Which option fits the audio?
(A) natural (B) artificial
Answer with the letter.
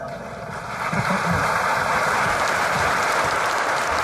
B